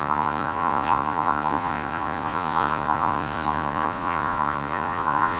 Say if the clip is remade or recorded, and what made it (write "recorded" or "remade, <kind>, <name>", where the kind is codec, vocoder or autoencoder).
remade, vocoder, Vocos